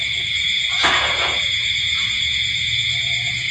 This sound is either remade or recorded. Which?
remade